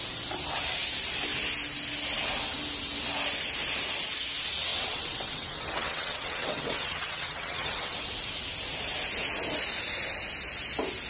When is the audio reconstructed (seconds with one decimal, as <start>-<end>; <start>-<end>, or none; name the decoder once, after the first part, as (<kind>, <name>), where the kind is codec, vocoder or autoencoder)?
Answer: 4.7-8.1 (vocoder, WaveNeXt)